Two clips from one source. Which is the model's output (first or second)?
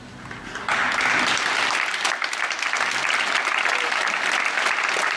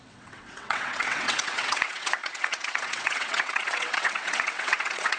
second